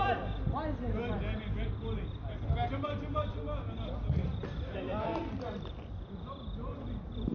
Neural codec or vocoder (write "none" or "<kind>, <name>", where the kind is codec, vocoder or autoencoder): none